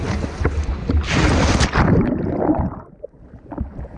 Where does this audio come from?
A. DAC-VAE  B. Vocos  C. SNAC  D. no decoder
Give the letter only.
D